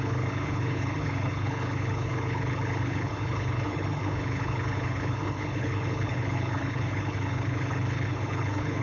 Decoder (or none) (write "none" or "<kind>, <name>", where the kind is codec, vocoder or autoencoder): codec, HILCodec